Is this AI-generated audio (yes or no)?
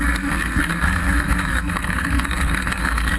yes